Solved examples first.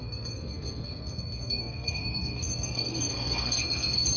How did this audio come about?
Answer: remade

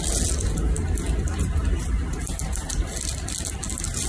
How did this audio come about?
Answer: recorded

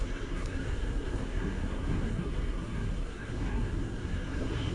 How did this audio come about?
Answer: remade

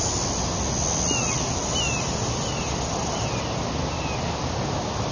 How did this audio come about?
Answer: recorded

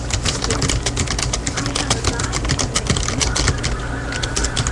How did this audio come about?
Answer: recorded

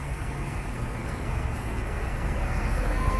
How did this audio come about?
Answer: remade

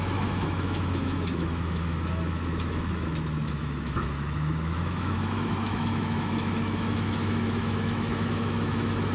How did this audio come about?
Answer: remade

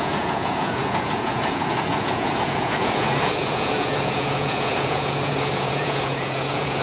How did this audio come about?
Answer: remade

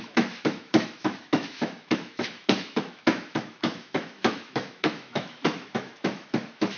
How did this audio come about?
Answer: remade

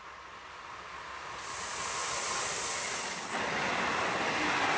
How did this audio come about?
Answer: recorded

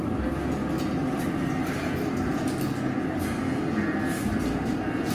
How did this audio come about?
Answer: recorded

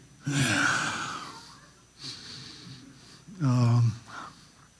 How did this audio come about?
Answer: recorded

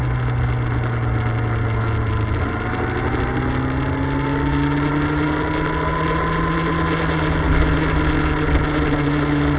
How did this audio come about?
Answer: recorded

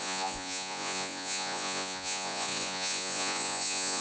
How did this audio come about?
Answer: remade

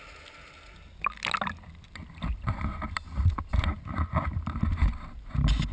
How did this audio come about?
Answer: recorded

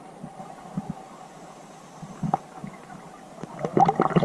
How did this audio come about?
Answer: recorded